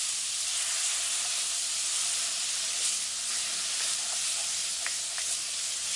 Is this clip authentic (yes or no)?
no